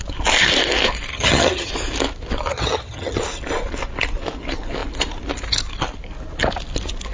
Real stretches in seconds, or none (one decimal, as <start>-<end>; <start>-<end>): 0.0-1.1; 1.7-2.5; 3.2-7.1